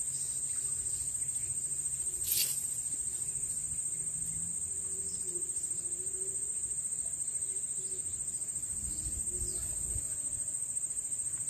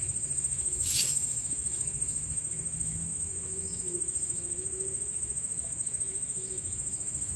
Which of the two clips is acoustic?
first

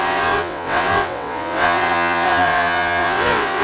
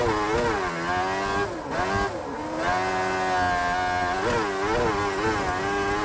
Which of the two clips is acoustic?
second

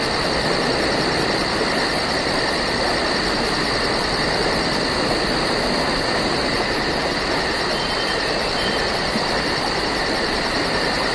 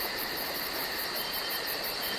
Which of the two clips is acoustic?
first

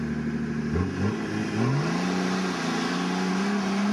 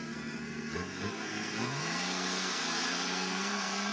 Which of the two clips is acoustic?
first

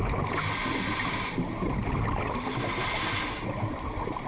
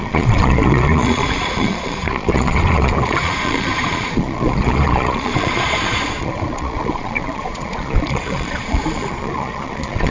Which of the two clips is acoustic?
first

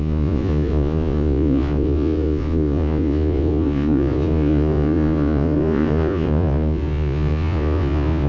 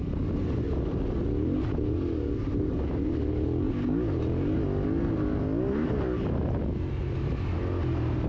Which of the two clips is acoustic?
second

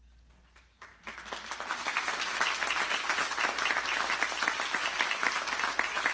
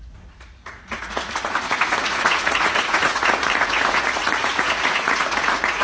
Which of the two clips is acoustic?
first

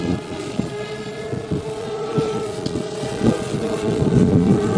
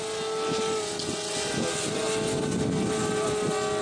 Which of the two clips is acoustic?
second